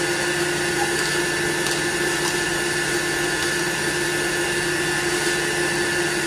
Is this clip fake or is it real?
real